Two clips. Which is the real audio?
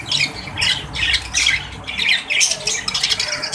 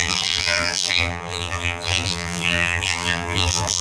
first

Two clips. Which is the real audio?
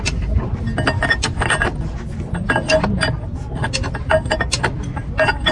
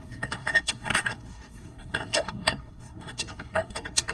first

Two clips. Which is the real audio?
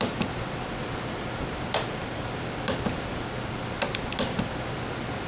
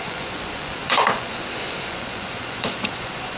first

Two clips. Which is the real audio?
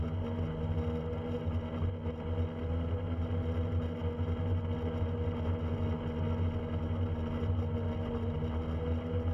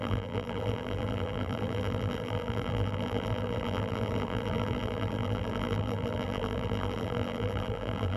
first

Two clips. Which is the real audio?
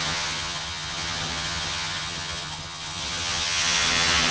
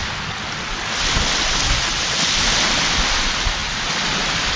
second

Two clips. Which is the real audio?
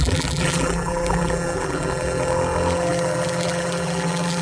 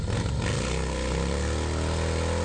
second